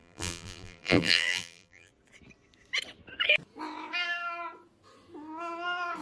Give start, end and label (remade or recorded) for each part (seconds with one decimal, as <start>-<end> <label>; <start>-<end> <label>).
0.0-1.9 remade; 1.9-6.0 recorded